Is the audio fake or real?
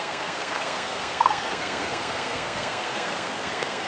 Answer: fake